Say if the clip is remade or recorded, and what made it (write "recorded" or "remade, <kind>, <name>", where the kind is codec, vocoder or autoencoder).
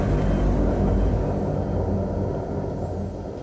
recorded